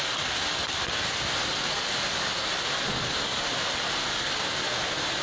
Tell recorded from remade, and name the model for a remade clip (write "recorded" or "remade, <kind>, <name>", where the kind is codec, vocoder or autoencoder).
recorded